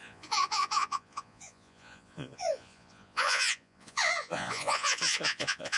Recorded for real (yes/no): no